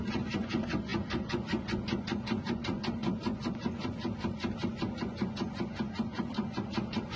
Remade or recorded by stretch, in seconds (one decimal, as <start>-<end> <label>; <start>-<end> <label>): 0.0-4.0 remade; 4.0-4.7 recorded; 4.7-7.2 remade